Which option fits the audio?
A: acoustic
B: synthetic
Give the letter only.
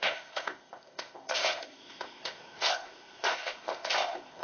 B